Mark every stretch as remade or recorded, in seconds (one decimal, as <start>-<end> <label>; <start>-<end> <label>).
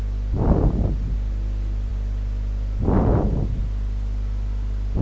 0.0-5.0 recorded